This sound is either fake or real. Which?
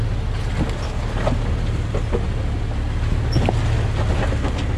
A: real